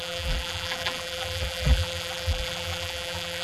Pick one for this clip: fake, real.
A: fake